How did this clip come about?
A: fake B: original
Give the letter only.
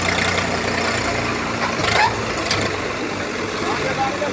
B